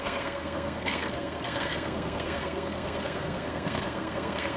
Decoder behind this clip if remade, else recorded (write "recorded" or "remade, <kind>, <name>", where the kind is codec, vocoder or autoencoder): remade, codec, SNAC